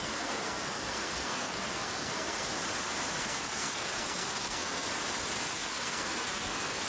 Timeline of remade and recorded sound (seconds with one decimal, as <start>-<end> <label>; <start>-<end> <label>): 0.0-2.5 remade; 2.5-3.2 recorded; 3.2-4.9 remade; 4.9-5.5 recorded; 5.5-6.9 remade